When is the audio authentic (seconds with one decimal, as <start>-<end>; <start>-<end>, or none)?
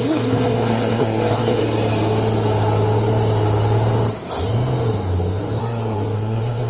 1.6-5.6